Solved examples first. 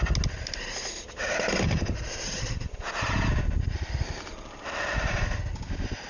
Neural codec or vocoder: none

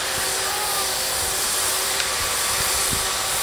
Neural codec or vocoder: vocoder, BigVGAN v2